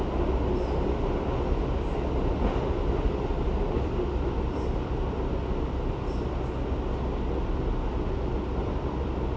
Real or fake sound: real